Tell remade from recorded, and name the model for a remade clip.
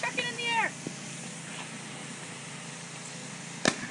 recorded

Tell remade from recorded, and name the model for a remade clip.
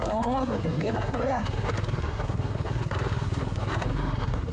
remade, codec, SNAC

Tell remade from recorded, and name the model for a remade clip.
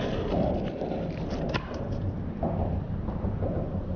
recorded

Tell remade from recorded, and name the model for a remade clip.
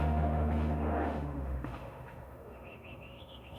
remade, autoencoder, DAC-VAE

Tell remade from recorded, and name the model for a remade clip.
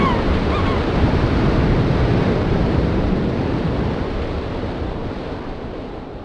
remade, vocoder, BigVGAN v2